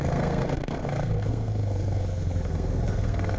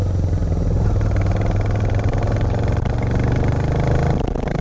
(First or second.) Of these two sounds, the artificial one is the first